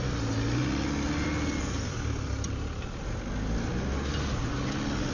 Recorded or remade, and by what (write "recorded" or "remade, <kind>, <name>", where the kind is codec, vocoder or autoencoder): recorded